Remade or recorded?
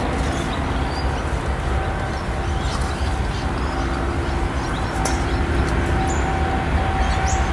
recorded